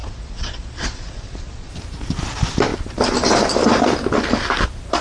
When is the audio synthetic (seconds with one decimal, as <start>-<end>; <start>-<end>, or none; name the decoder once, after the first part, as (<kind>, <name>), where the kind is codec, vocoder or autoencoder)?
0.0-1.7 (vocoder, Vocos)